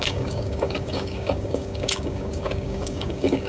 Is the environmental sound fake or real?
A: fake